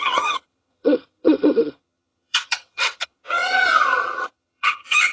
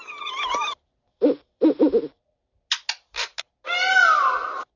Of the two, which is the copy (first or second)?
first